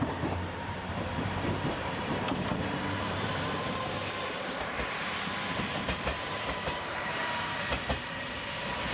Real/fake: fake